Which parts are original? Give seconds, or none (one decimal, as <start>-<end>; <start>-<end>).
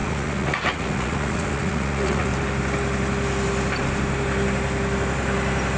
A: 2.3-5.8